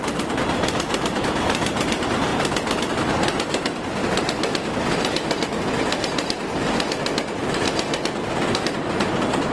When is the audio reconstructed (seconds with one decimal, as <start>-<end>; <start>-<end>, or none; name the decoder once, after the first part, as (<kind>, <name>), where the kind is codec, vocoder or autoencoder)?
0.0-2.3 (vocoder, BigVGAN v2); 2.9-4.0; 8.9-9.5